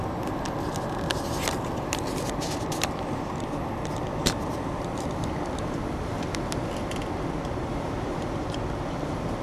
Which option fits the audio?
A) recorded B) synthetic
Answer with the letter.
A